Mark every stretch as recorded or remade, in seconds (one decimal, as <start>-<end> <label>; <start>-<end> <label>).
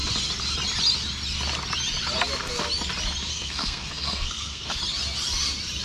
0.0-3.3 recorded; 3.3-4.8 remade; 4.8-5.8 recorded